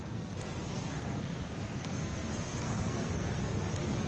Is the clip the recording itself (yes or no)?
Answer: no